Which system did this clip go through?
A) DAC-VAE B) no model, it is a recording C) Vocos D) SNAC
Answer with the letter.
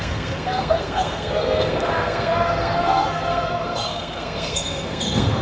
D